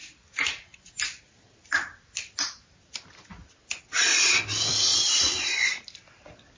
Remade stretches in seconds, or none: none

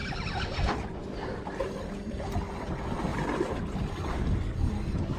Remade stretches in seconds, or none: 0.0-1.0 (vocoder, BigVGAN v2); 3.1-3.6

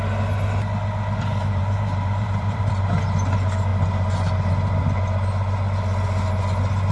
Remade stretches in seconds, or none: 1.3-2.7 (vocoder, BigVGAN v2)

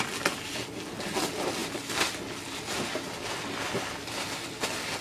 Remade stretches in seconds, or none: none

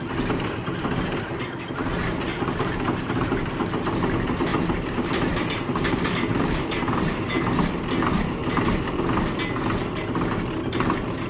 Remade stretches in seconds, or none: 2.3-3.5 (vocoder, BigVGAN v2); 4.5-7.3

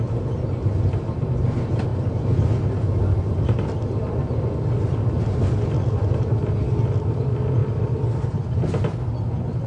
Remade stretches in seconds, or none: 7.6-9.0 (vocoder, BigVGAN v2)